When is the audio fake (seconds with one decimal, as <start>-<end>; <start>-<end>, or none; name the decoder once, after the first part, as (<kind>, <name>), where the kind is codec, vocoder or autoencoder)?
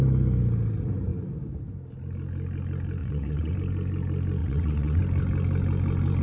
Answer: 3.0-3.5 (vocoder, WaveNeXt); 4.4-5.0